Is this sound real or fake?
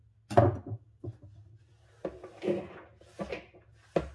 real